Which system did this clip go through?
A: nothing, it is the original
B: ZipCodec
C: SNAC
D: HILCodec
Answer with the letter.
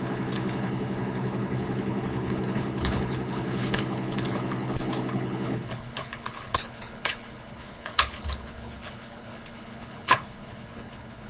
D